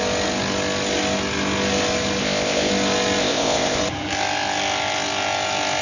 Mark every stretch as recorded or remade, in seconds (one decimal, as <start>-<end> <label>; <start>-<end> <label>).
0.0-2.2 recorded; 2.2-2.7 remade; 2.7-3.2 recorded; 3.2-3.8 remade; 3.8-5.8 recorded